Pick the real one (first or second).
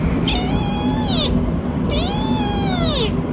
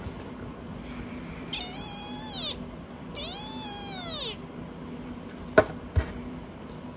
second